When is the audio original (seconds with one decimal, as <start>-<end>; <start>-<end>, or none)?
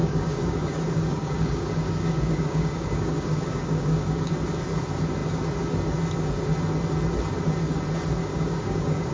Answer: 4.3-8.2